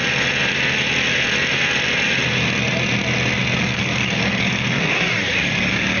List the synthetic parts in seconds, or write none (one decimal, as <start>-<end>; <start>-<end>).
3.6-6.0